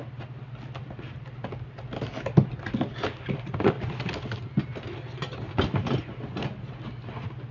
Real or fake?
real